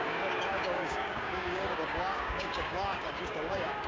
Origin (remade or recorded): remade